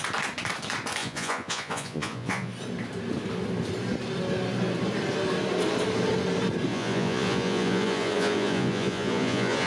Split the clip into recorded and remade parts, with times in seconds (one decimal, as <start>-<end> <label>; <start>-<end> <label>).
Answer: 0.0-1.0 recorded; 1.0-2.5 remade; 2.5-6.7 recorded; 6.7-9.7 remade